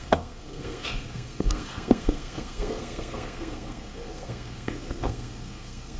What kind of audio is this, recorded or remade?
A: remade